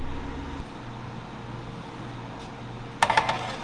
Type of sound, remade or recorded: recorded